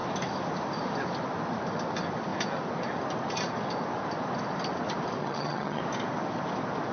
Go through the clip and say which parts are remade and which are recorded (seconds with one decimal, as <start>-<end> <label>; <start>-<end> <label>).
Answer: 0.0-5.2 recorded; 5.2-5.8 remade; 5.8-6.9 recorded